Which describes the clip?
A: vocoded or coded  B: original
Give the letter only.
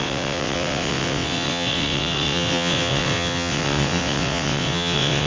A